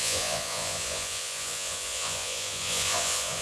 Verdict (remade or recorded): remade